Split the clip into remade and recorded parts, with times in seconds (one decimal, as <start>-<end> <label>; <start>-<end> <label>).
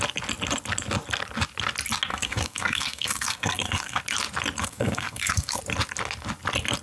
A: 0.0-2.1 recorded; 2.1-4.0 remade; 4.0-4.6 recorded; 4.6-5.6 remade; 5.6-6.8 recorded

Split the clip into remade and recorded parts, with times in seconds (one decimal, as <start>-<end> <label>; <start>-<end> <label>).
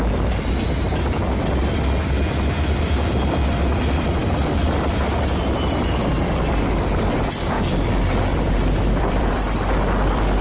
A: 0.0-4.2 recorded; 4.2-7.6 remade; 7.6-8.3 recorded; 8.3-10.4 remade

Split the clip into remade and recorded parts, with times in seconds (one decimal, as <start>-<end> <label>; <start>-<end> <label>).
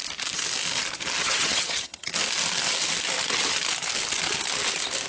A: 0.0-1.2 recorded; 1.2-2.1 remade; 2.1-5.1 recorded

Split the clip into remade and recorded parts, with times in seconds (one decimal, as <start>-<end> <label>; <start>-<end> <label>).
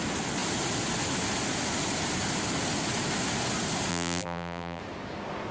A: 0.0-3.9 recorded; 3.9-4.8 remade; 4.8-5.5 recorded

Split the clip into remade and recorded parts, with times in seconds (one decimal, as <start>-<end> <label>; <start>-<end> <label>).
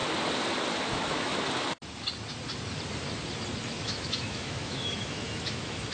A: 0.0-0.9 recorded; 0.9-1.3 remade; 1.3-3.7 recorded; 3.7-5.9 remade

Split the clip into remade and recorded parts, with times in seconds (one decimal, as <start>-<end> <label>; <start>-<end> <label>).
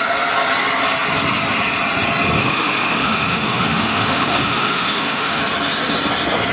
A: 0.0-2.4 recorded; 2.4-5.4 remade; 5.4-6.5 recorded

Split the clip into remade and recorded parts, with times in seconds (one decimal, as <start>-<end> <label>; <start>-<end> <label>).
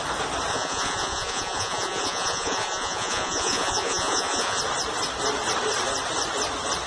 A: 0.0-0.5 recorded; 0.5-4.6 remade; 4.6-6.9 recorded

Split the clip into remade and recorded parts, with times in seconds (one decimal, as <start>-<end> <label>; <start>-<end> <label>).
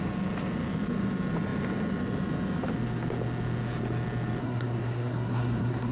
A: 0.0-4.4 recorded; 4.4-5.9 remade